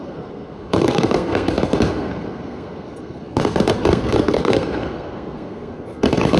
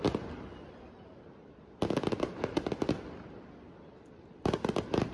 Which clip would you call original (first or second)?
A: second